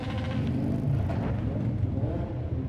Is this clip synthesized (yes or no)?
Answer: yes